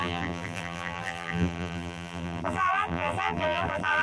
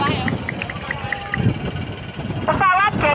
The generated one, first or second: first